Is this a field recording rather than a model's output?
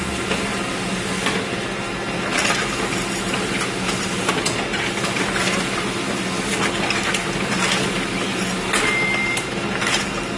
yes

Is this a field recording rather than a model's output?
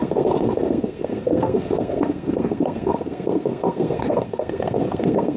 no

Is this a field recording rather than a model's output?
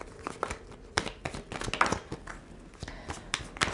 yes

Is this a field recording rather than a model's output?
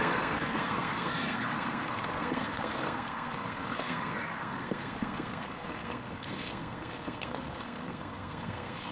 no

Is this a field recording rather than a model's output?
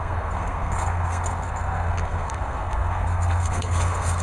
no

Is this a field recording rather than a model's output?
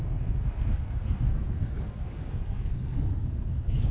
no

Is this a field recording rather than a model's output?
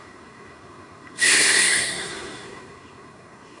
no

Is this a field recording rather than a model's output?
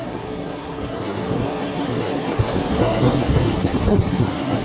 no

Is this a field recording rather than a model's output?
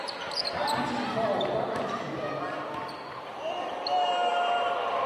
yes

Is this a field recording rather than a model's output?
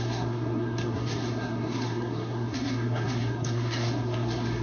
no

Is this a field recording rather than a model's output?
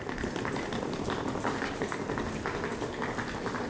yes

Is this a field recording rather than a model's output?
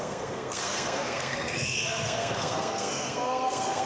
no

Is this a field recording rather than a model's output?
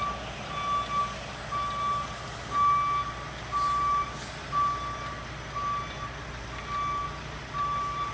yes